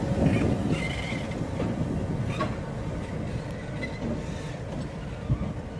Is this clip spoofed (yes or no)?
no